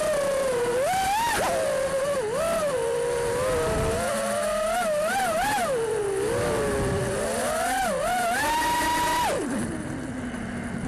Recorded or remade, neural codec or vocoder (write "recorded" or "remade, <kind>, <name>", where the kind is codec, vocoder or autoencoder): recorded